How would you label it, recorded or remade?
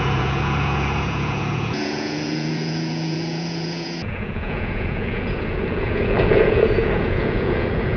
remade